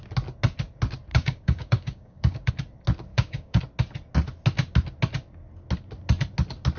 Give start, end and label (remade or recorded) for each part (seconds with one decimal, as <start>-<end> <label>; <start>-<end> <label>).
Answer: 0.0-1.1 recorded; 1.1-2.5 remade; 2.5-3.1 recorded; 3.1-3.6 remade; 3.6-6.8 recorded